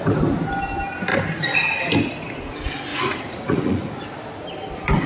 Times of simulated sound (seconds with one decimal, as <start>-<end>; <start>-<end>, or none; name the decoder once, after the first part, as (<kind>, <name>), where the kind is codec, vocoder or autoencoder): 2.9-4.0 (vocoder, Vocos)